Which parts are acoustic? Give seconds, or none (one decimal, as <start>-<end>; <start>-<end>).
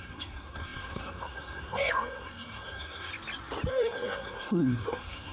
3.1-3.7